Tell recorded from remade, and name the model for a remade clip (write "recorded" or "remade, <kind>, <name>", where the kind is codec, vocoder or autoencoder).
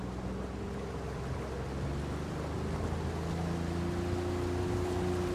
recorded